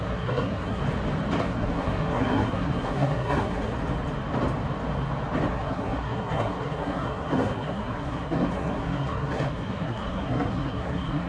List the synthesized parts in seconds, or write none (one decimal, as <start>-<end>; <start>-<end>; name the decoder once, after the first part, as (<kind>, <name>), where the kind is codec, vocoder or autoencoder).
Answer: 0.0-0.8 (codec, SNAC); 1.4-3.7; 5.5-11.3